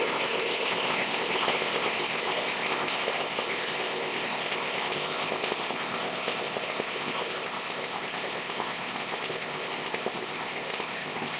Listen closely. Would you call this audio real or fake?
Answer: fake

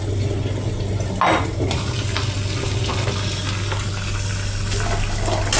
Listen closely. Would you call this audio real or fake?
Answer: real